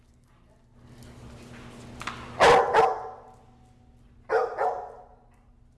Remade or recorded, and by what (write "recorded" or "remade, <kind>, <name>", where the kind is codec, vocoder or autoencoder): recorded